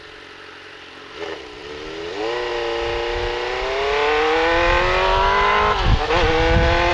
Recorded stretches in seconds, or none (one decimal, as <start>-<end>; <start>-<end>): 0.0-6.9